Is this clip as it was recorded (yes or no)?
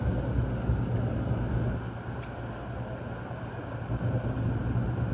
yes